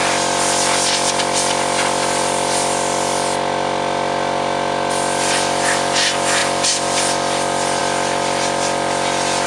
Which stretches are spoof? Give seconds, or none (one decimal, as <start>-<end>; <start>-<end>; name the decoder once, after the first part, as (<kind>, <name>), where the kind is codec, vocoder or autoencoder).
none